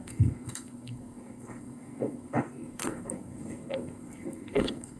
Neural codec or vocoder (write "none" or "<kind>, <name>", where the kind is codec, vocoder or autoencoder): codec, SNAC